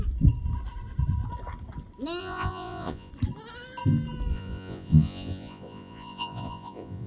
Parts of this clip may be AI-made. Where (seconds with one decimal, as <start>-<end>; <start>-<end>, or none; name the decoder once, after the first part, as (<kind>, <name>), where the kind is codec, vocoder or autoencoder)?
2.2-3.1 (vocoder, Vocos); 4.3-7.1